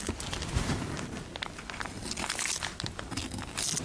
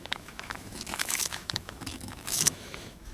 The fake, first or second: second